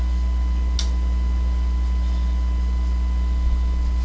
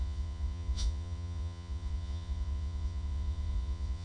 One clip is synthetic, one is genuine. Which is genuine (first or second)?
first